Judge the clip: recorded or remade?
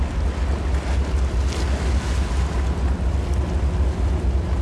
recorded